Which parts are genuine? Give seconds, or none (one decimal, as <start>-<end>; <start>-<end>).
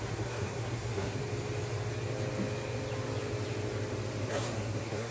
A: 1.2-4.3